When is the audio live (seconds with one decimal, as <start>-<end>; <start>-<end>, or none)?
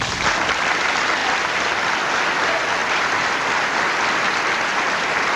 0.0-1.2; 1.8-2.8; 3.6-4.7